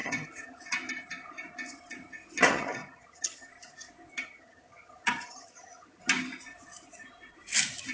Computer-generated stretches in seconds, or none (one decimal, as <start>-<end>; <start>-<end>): 0.0-0.6; 2.5-3.5; 4.1-6.0